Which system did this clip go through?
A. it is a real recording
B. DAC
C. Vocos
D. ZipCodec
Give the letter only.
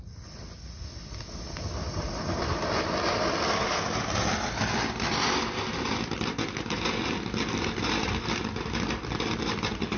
A